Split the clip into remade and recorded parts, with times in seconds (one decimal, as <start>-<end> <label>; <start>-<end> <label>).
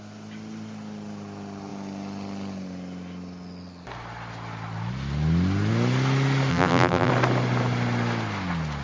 0.0-6.5 recorded; 6.5-7.1 remade; 7.1-8.8 recorded